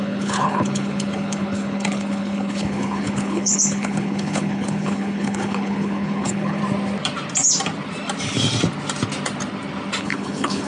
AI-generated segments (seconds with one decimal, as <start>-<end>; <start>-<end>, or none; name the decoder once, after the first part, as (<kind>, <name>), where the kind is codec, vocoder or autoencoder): 0.0-6.6 (codec, HILCodec); 10.0-10.7